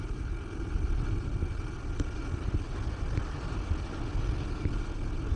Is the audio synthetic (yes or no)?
no